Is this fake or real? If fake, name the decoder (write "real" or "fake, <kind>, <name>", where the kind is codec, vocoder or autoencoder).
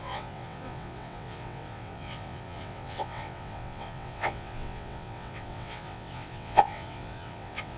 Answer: fake, vocoder, WaveNeXt